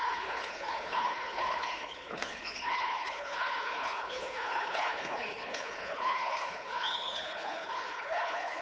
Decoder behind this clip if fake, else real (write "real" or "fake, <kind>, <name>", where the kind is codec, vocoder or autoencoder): fake, codec, HILCodec